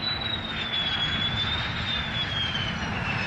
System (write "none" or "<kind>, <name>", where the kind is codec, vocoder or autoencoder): none